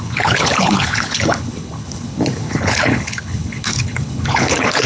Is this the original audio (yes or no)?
no